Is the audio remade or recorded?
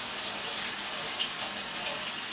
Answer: recorded